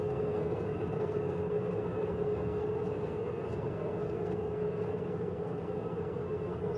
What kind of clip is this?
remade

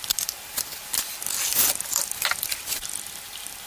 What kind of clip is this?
recorded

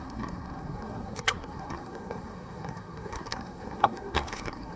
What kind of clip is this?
remade